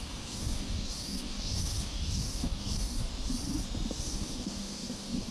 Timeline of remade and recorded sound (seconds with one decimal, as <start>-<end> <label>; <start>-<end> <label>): 0.0-3.1 remade; 3.1-4.0 recorded; 4.0-5.3 remade